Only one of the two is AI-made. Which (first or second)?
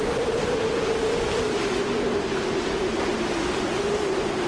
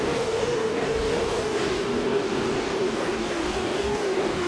second